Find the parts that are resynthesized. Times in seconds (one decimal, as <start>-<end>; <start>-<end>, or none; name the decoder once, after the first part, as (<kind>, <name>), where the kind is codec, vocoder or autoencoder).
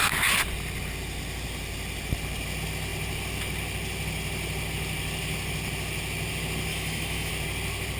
6.7-7.3 (autoencoder, DAC-VAE)